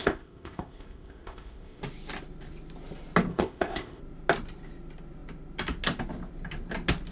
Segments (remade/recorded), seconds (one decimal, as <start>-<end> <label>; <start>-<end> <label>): 0.0-1.8 remade; 1.8-3.3 recorded; 3.3-4.0 remade; 4.0-7.1 recorded